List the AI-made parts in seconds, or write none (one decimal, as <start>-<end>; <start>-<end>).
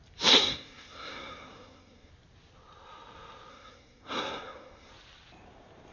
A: 0.4-2.1; 3.5-4.9